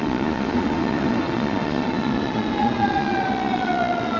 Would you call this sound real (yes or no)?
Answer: no